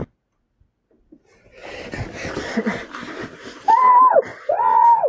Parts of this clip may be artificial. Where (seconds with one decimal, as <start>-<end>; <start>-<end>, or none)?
1.6-3.5; 4.3-5.1